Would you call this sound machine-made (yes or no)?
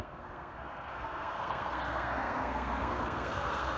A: yes